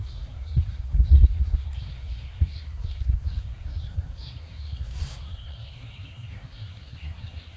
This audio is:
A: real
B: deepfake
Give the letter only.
B